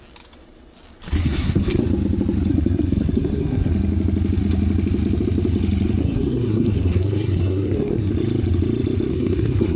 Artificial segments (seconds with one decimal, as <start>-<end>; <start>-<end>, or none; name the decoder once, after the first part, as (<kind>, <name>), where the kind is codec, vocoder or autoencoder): 1.2-1.8 (codec, SNAC); 2.5-3.7; 6.0-8.1; 9.1-9.8